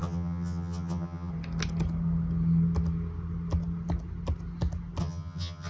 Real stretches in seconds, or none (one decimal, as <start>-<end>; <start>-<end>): 1.3-5.0